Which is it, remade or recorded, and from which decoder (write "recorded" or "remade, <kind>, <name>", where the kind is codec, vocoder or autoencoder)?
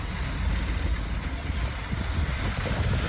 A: recorded